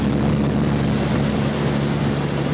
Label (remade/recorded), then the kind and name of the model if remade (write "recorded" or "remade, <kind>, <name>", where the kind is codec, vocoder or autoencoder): recorded